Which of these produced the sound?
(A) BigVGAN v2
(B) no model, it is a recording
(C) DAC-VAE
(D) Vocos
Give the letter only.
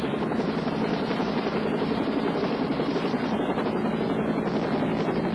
B